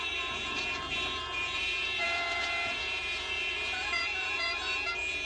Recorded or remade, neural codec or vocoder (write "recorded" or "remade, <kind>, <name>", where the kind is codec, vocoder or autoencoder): remade, vocoder, Vocos